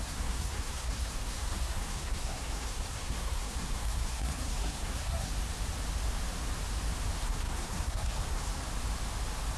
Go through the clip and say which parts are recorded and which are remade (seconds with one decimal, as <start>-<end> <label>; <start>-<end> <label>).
0.0-5.3 remade; 5.3-7.2 recorded; 7.2-8.5 remade; 8.5-9.6 recorded